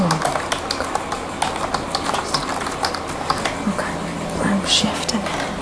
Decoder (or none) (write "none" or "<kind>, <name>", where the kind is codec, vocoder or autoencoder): none